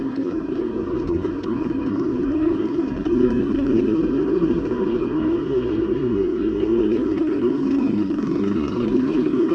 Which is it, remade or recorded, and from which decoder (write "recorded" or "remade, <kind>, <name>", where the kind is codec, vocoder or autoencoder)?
remade, codec, SNAC